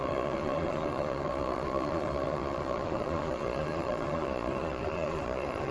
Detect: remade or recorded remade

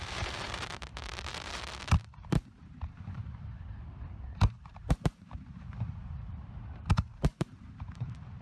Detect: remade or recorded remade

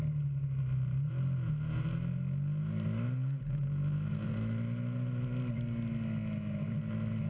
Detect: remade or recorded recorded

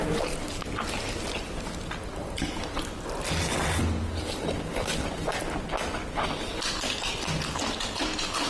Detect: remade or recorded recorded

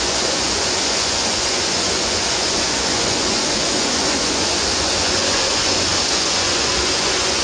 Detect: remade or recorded remade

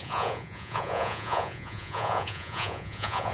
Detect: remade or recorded remade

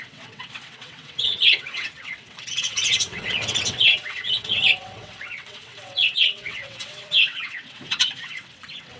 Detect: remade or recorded remade